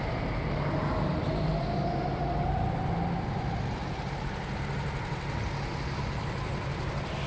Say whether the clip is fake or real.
real